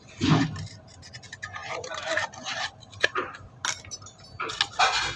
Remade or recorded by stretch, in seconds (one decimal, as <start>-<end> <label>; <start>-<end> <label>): 0.0-1.6 recorded; 1.6-2.6 remade; 2.6-5.2 recorded